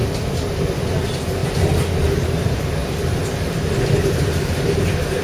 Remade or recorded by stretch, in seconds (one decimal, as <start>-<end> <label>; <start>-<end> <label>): 0.0-0.6 recorded; 0.6-1.4 remade; 1.4-2.1 recorded; 2.1-2.8 remade; 2.8-3.4 recorded; 3.4-5.2 remade